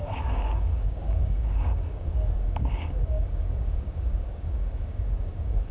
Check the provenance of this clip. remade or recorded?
remade